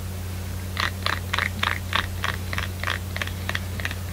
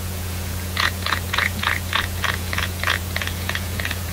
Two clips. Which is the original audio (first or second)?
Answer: first